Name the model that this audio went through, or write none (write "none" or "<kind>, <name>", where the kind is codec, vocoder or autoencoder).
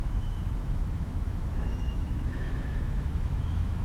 autoencoder, DAC-VAE